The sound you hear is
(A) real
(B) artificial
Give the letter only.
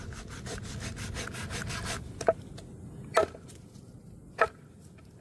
A